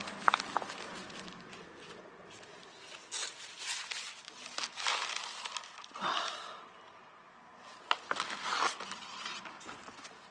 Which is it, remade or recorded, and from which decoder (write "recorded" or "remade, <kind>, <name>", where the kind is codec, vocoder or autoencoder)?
recorded